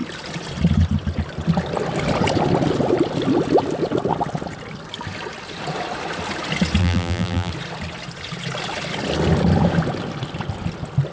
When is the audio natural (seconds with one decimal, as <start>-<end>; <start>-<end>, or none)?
0.0-6.8; 7.5-11.1